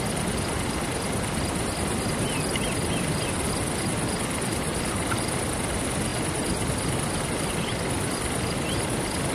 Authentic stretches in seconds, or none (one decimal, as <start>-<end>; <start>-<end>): 0.0-9.3

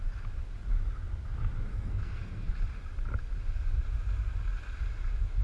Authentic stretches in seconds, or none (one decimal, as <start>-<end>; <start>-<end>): 0.0-1.7; 2.5-5.4

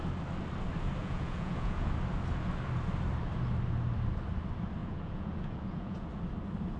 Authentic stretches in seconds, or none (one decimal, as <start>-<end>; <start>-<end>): 0.0-1.0; 1.9-4.8; 6.1-6.8

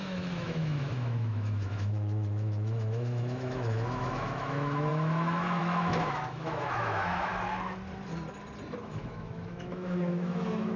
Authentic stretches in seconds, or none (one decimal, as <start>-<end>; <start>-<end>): 7.3-8.8

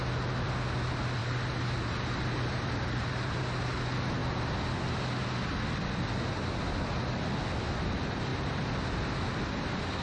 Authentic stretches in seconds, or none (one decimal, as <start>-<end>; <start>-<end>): 0.0-1.2; 3.4-10.0

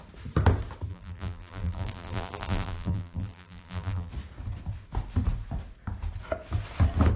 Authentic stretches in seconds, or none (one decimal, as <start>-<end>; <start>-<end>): 0.0-0.9; 4.1-7.2

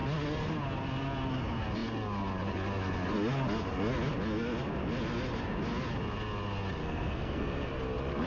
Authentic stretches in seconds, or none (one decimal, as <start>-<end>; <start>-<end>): 0.0-6.8; 7.7-8.3